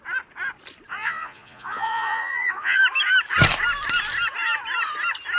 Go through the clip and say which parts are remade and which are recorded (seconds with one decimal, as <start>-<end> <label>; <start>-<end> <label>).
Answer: 0.0-0.9 recorded; 0.9-2.8 remade; 2.8-5.4 recorded